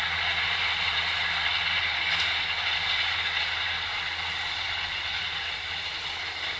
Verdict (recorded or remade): recorded